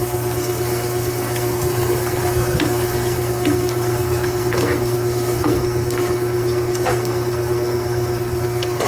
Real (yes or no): no